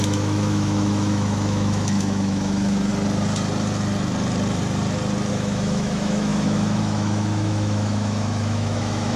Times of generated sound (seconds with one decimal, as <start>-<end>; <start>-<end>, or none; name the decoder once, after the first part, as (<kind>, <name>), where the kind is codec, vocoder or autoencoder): 0.0-2.9 (autoencoder, DAC-VAE); 5.3-9.2